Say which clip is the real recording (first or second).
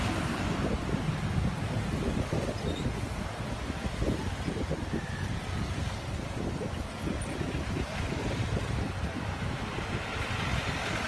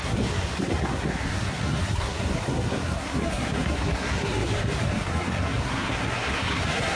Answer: first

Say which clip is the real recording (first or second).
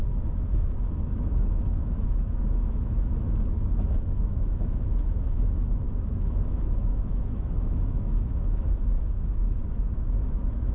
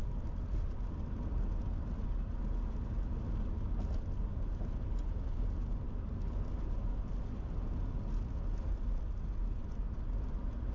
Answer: second